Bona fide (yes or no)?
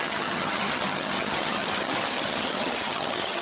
no